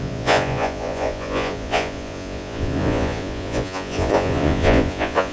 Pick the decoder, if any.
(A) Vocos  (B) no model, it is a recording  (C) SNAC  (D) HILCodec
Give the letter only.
A